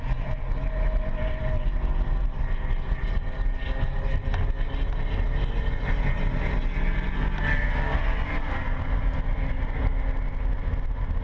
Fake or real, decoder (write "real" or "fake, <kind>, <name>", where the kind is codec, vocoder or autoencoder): real